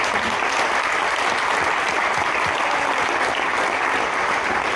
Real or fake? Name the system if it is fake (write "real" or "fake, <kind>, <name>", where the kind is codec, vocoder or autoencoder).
fake, vocoder, BigVGAN v2